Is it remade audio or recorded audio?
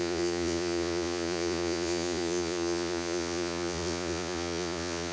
remade